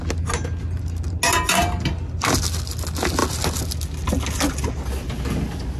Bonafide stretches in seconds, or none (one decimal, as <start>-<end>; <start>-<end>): 0.0-5.8